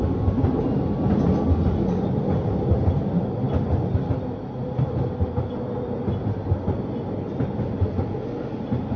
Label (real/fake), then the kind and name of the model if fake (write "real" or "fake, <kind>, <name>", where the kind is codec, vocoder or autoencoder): real